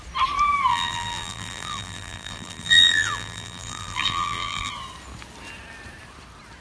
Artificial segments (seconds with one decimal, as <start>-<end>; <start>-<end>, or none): 0.7-4.7